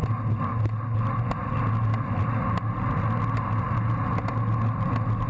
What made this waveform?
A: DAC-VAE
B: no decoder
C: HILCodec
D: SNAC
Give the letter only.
B